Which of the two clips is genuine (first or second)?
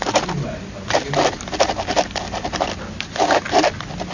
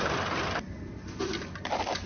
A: first